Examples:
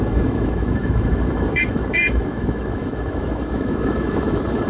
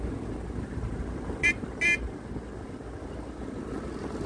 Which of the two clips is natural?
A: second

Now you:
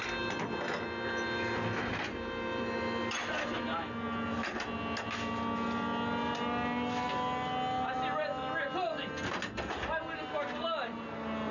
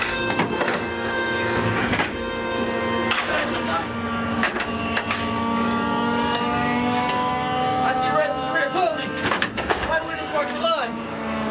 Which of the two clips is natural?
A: first